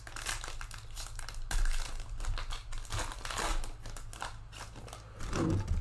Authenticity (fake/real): real